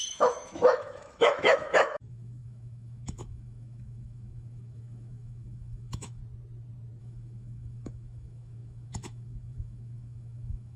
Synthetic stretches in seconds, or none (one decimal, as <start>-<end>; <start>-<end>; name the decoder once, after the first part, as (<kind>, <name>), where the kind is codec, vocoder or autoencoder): 0.0-6.2 (autoencoder, DAC-VAE); 7.0-10.8